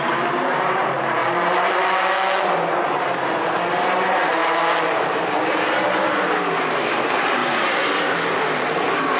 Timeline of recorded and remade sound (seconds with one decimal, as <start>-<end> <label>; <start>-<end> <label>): 0.0-1.2 remade; 1.2-3.5 recorded; 3.5-4.4 remade; 4.4-5.0 recorded; 5.0-9.2 remade